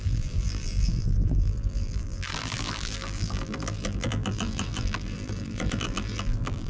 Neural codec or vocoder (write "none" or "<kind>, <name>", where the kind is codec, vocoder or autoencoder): vocoder, BigVGAN v2